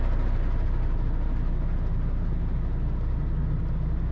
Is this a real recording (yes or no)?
yes